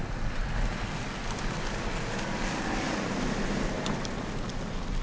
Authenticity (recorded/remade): recorded